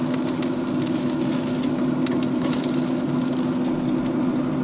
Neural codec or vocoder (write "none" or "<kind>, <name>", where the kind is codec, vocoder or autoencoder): none